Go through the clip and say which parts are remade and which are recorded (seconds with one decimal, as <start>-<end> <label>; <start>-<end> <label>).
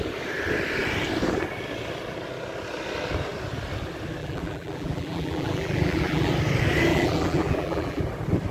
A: 0.0-4.2 recorded; 4.2-6.3 remade; 6.3-6.9 recorded; 6.9-8.0 remade; 8.0-8.5 recorded